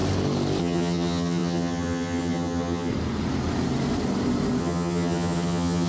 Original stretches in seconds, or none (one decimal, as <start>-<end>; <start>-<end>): 0.0-0.6; 2.9-4.6